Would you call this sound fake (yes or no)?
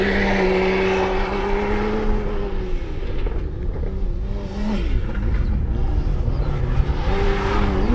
no